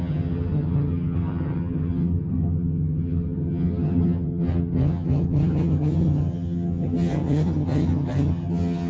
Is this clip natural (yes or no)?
no